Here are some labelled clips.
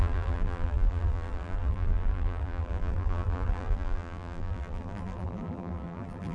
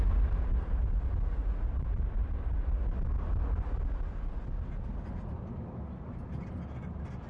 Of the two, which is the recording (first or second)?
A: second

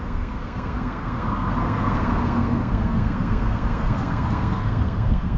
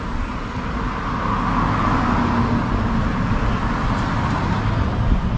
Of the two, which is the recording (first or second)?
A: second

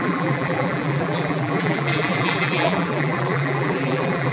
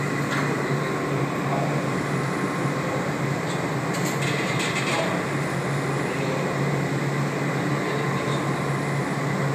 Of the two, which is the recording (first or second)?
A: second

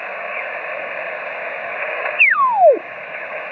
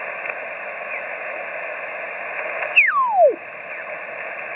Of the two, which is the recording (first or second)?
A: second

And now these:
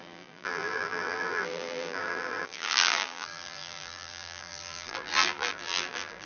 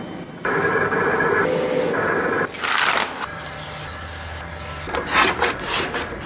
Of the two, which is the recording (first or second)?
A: second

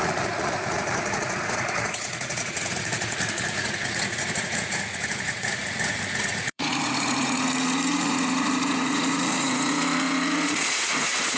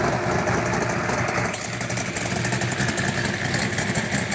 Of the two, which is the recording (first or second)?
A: second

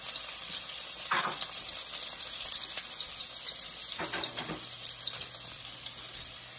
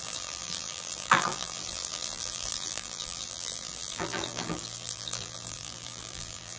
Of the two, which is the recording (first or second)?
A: first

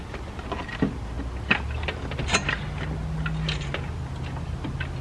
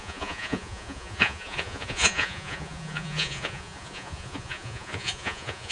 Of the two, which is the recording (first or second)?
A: first